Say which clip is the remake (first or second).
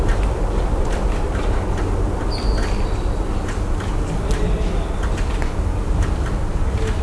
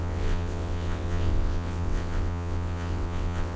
second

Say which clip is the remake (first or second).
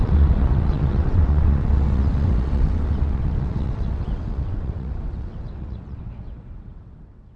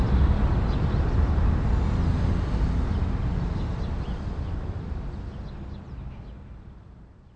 first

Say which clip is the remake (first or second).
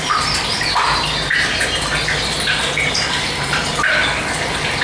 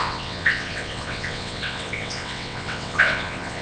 second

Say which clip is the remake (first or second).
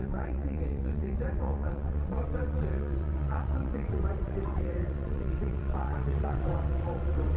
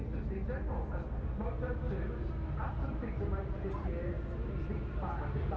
first